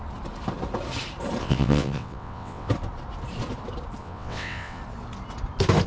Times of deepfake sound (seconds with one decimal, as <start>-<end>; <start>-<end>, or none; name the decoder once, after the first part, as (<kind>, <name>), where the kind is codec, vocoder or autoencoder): 1.4-2.7 (vocoder, WaveNeXt); 4.0-4.8